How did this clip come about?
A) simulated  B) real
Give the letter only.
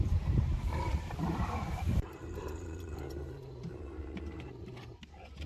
A